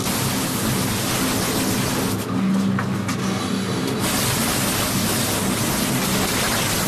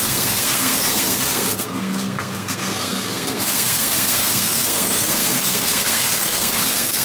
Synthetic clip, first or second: second